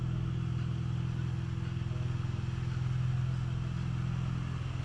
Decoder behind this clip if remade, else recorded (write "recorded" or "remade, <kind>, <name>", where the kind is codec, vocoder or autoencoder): recorded